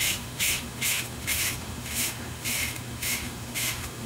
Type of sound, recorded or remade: remade